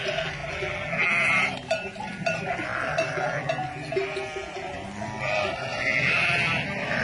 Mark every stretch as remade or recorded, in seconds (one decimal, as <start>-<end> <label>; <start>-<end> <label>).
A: 0.0-0.4 remade; 0.4-0.9 recorded; 0.9-7.0 remade